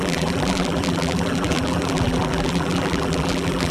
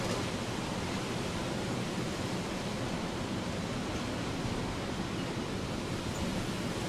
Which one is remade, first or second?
first